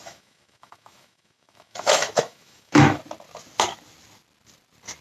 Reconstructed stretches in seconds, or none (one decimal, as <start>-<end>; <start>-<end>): 0.0-3.0

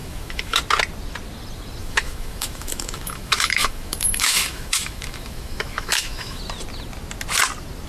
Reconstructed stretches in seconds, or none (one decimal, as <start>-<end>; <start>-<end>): 0.0-0.6; 1.8-6.4

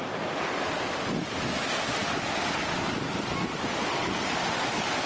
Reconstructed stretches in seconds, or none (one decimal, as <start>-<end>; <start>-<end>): none

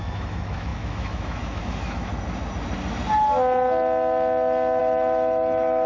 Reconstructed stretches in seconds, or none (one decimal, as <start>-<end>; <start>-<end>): 0.0-2.1; 4.8-5.9

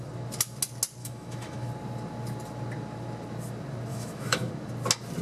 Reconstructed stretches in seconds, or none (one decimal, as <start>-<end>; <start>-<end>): 1.0-1.7; 3.9-4.5

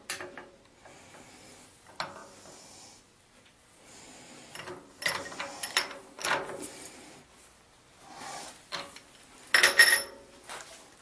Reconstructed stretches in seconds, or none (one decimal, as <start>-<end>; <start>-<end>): none